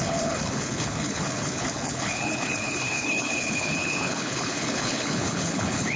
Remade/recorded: remade